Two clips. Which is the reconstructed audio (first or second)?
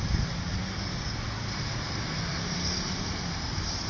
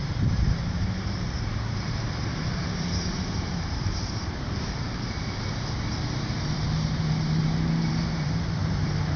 second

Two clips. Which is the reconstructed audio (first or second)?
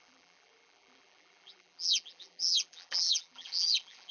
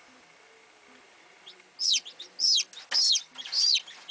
first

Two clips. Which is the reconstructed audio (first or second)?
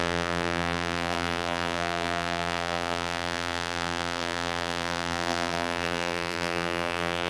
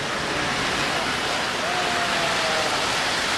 first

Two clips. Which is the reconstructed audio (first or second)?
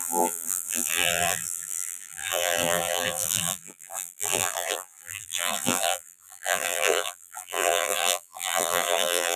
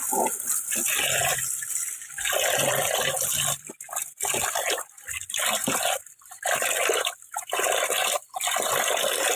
first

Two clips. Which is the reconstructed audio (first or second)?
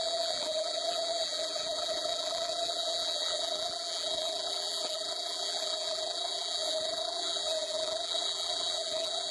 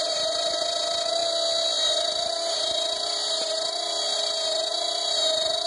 first